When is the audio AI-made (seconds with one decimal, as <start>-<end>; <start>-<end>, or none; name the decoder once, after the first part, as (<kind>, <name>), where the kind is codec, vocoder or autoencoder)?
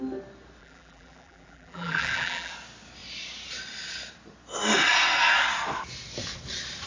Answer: 0.6-2.5 (vocoder, BigVGAN v2)